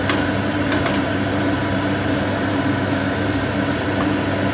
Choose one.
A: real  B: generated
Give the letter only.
A